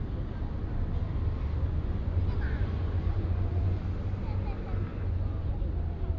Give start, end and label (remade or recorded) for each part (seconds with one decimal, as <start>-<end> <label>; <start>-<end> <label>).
0.0-1.7 recorded; 1.7-3.8 remade; 3.8-4.9 recorded; 4.9-5.5 remade; 5.5-6.2 recorded